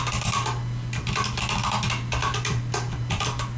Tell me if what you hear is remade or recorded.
recorded